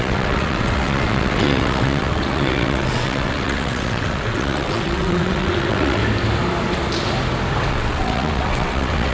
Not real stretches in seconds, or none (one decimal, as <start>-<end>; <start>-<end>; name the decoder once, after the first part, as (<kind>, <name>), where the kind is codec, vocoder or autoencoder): 0.0-6.0 (vocoder, WaveNeXt); 7.7-9.1